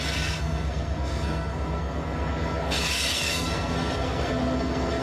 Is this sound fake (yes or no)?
yes